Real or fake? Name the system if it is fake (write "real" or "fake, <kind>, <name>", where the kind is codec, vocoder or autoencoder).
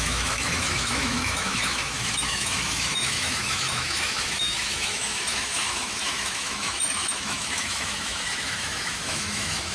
fake, autoencoder, DAC-VAE